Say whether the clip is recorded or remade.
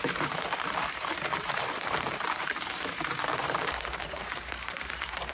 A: remade